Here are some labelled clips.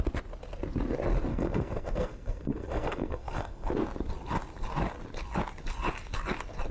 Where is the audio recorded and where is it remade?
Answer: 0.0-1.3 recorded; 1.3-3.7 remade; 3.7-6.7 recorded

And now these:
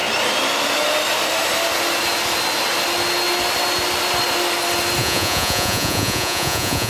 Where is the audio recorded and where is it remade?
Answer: 0.0-5.0 recorded; 5.0-6.9 remade

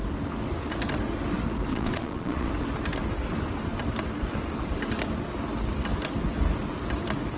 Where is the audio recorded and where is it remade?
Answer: 0.0-1.7 recorded; 1.7-2.5 remade; 2.5-7.4 recorded